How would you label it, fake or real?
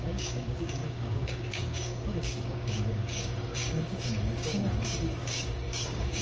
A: fake